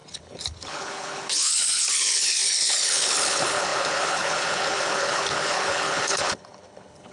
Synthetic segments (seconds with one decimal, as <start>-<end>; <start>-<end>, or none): 0.0-7.1